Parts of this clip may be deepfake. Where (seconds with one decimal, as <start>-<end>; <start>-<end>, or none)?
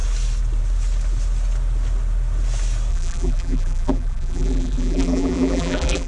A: 2.9-6.1